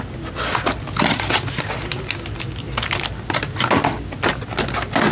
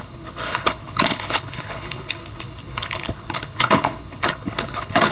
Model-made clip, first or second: second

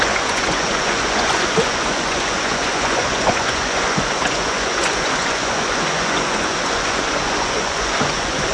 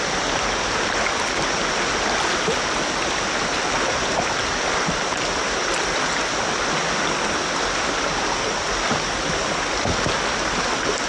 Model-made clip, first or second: first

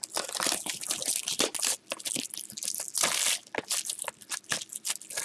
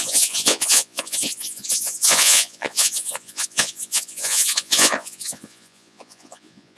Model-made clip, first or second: second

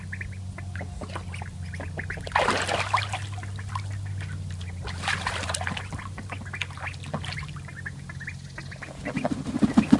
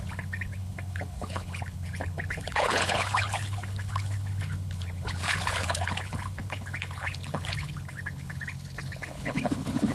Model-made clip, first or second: second